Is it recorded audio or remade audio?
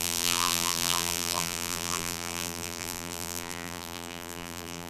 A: remade